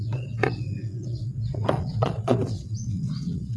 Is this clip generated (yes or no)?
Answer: yes